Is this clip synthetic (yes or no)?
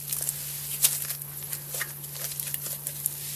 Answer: no